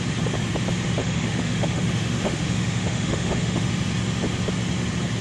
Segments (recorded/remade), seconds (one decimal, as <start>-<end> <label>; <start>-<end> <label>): 0.0-1.0 recorded; 1.0-3.7 remade; 3.7-5.2 recorded